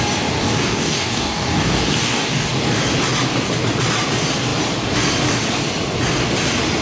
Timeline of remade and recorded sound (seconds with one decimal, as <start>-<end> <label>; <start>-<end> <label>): 0.0-0.4 recorded; 0.4-2.5 remade; 2.5-6.8 recorded